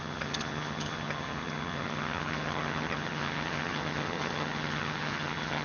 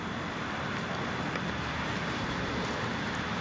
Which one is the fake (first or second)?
first